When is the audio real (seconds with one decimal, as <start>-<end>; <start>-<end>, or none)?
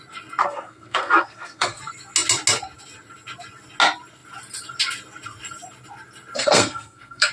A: 0.0-0.4; 1.8-6.4